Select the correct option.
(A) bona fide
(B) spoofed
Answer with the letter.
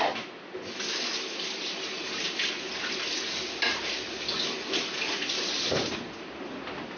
A